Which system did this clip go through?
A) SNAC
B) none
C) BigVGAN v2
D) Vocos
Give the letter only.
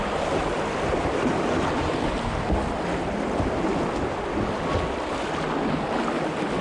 B